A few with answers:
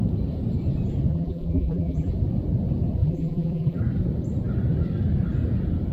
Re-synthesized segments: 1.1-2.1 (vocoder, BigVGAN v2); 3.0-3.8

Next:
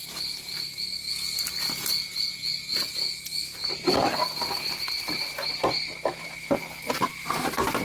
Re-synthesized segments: 0.0-0.8 (vocoder, BigVGAN v2); 3.6-4.2; 7.1-7.8

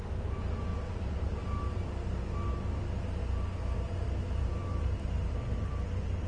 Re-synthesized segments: 0.7-2.1 (vocoder, BigVGAN v2); 3.6-5.8

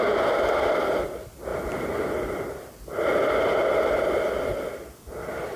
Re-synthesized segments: none

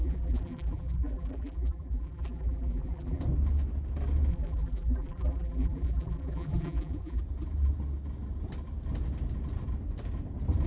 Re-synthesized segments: 0.0-3.2 (vocoder, BigVGAN v2); 4.3-7.2

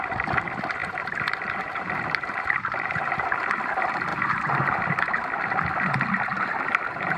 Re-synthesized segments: 0.8-3.4 (vocoder, BigVGAN v2); 4.1-4.8; 6.3-7.2